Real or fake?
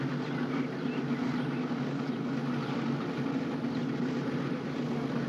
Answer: real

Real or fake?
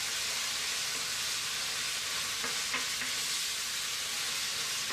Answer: real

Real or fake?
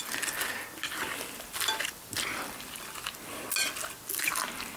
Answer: real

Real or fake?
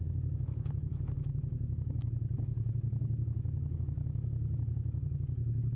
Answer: fake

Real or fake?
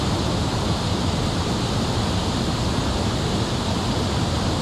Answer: real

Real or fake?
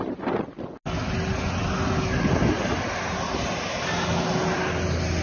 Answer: real